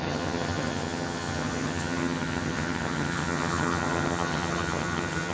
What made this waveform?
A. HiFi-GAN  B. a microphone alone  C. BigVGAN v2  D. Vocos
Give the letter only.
A